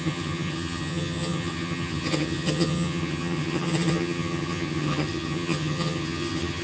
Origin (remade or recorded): remade